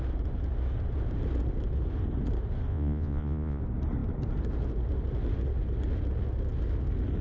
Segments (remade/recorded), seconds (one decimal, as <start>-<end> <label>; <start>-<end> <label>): 0.0-2.7 recorded; 2.7-3.6 remade; 3.6-7.2 recorded